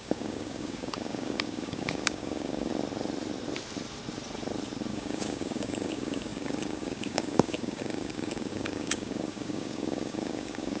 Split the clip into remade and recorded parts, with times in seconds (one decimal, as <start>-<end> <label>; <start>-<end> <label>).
0.0-2.7 remade; 2.7-4.9 recorded; 4.9-10.8 remade